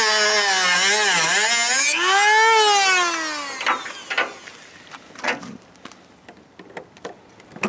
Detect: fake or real real